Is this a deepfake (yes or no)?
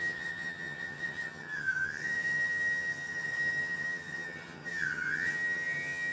yes